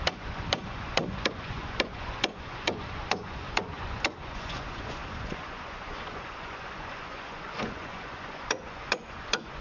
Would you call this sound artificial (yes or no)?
yes